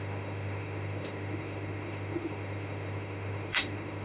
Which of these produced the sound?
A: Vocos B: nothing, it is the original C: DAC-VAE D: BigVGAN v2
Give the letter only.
C